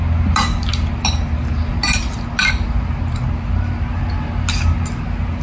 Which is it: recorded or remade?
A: recorded